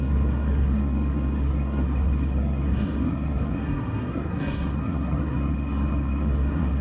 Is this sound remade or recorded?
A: remade